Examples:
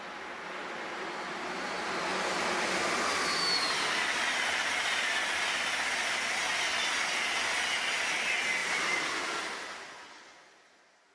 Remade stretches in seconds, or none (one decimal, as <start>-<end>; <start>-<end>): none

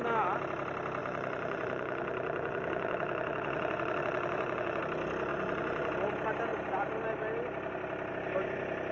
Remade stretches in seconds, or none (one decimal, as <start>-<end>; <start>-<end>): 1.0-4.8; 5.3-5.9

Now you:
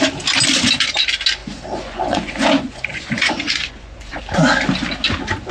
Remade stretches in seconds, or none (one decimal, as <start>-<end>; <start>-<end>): 1.4-4.2